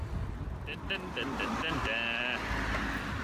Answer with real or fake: real